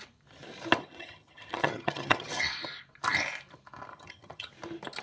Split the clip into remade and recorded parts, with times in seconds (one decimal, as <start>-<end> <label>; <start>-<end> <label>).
0.0-0.8 recorded; 0.8-2.4 remade; 2.4-3.9 recorded; 3.9-4.5 remade; 4.5-5.0 recorded